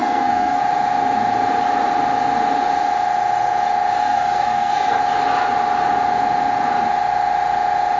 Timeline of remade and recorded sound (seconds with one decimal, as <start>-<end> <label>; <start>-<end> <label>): 0.0-0.6 remade; 0.6-4.0 recorded; 4.0-5.0 remade; 5.0-8.0 recorded